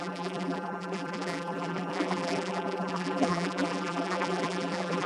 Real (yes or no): no